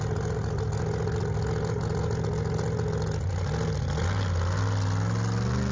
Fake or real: real